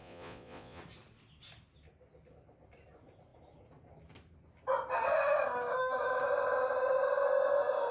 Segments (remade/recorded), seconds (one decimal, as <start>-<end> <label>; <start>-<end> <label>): 0.0-0.8 remade; 0.8-7.9 recorded